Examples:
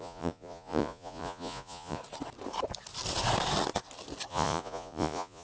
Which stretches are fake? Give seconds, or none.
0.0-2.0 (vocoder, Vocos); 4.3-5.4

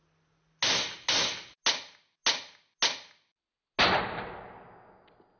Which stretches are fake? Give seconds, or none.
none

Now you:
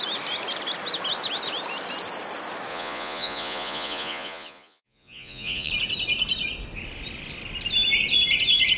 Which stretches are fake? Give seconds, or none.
2.7-5.7 (vocoder, Vocos)

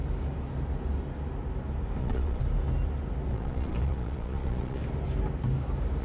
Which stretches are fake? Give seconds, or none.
2.0-2.4 (vocoder, Vocos); 3.3-4.8

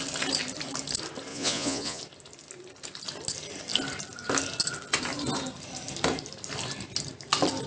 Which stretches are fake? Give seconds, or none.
1.3-2.0 (vocoder, Vocos)

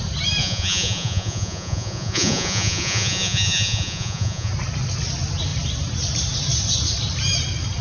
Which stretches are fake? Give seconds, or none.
0.4-4.5 (vocoder, Vocos)